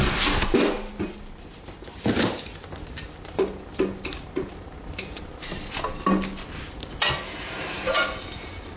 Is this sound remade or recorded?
recorded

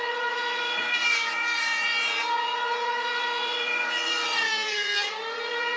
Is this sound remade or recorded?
remade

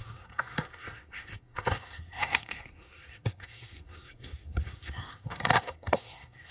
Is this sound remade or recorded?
remade